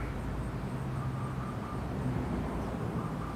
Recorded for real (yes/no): no